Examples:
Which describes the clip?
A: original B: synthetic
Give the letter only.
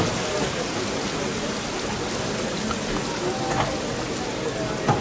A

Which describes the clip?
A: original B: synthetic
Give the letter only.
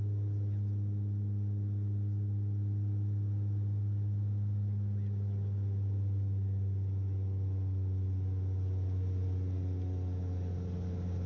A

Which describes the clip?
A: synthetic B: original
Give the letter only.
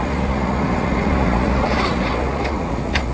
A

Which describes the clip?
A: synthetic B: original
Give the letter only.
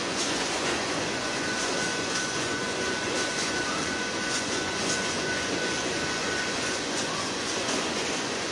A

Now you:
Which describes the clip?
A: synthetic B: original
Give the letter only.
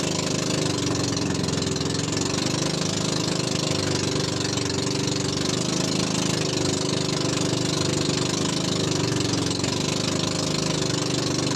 B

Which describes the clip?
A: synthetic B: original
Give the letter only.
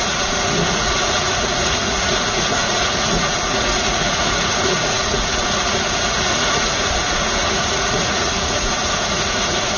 A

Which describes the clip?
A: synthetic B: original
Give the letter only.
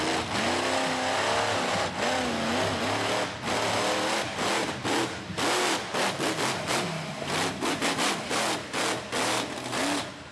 B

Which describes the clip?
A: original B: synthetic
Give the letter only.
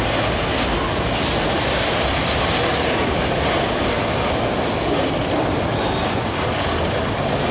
A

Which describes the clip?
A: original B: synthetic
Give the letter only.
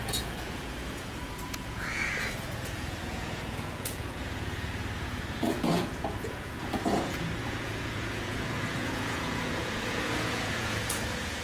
B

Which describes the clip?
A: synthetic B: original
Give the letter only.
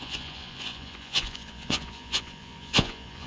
A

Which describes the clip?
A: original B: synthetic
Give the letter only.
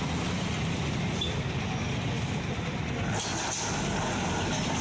A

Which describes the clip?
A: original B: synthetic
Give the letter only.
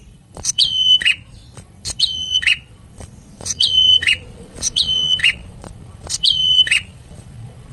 B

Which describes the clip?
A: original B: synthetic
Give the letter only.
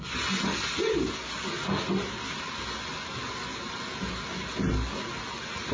A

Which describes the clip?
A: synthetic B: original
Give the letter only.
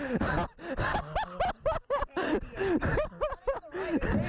B